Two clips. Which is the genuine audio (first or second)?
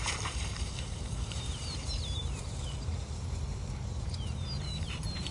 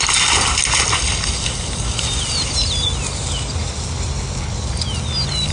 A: second